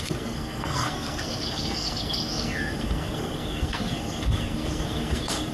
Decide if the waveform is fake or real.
fake